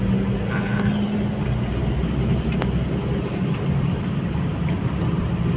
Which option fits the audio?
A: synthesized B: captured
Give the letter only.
B